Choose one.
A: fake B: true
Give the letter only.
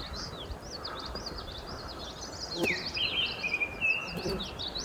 A